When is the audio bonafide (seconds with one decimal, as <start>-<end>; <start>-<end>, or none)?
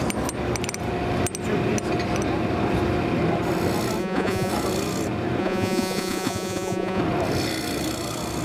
0.0-4.0; 4.5-5.4; 7.0-8.4